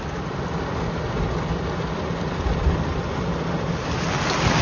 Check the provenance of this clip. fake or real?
real